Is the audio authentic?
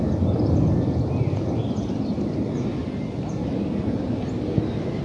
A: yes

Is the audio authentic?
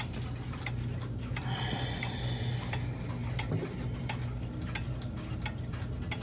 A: yes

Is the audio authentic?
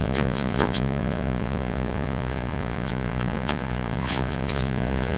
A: no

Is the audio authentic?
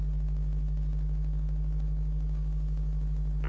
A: yes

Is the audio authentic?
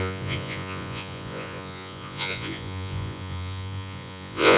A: no